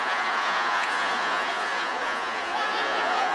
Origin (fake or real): fake